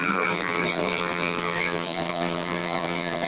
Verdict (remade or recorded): remade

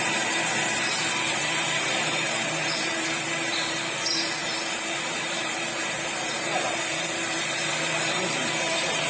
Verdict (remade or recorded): remade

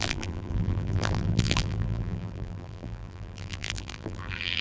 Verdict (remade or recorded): remade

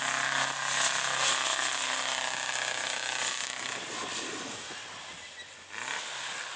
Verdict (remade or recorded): recorded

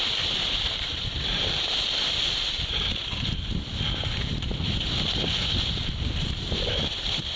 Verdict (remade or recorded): remade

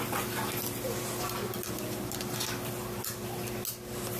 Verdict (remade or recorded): recorded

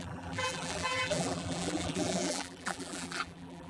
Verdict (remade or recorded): remade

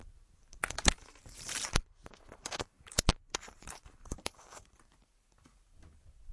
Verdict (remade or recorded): remade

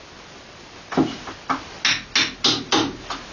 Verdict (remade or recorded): recorded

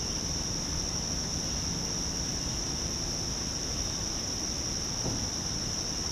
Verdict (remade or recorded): recorded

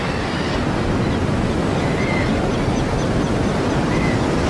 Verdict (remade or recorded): recorded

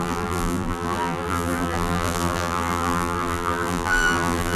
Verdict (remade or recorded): remade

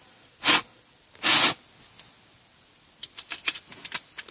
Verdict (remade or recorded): recorded